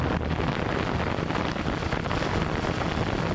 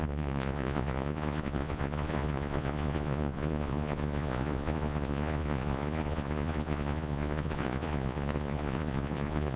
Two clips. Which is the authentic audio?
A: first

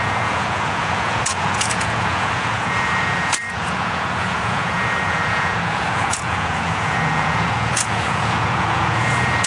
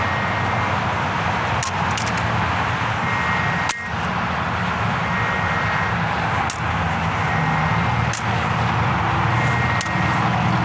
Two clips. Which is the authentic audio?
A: second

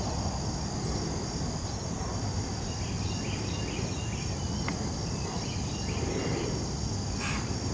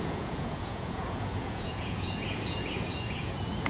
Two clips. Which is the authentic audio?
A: first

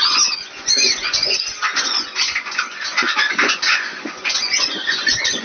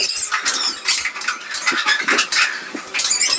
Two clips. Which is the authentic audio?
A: second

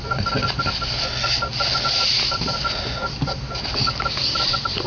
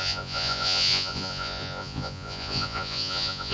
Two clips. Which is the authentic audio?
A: first